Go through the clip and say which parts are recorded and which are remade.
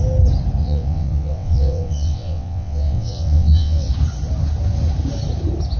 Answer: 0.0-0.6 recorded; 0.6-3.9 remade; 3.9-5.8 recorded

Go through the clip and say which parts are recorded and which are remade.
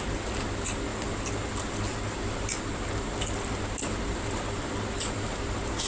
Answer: 0.0-5.9 recorded